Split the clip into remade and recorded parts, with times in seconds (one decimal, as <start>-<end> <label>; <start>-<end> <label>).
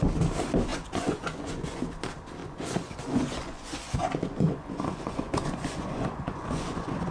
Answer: 0.0-0.7 recorded; 0.7-1.8 remade; 1.8-2.4 recorded; 2.4-7.1 remade